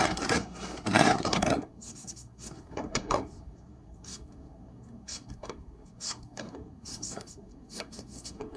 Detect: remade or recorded remade